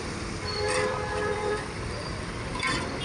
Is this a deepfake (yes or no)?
yes